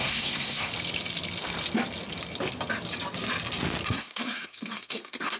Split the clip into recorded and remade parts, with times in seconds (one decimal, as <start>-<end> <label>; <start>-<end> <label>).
0.0-0.7 remade; 0.7-3.9 recorded; 3.9-5.4 remade